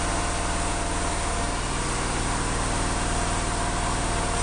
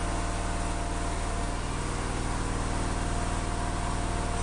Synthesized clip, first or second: first